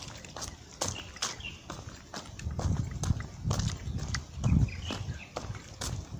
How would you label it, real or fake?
real